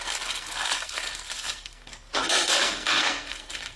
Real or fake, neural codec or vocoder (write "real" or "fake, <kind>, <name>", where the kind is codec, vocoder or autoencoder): fake, codec, SNAC